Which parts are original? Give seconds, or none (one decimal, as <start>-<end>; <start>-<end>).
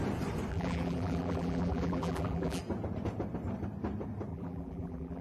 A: 0.0-0.5; 2.6-4.3